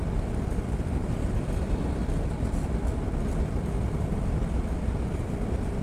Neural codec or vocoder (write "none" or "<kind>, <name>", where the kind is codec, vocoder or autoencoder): none